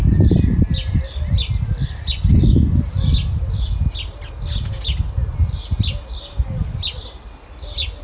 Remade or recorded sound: recorded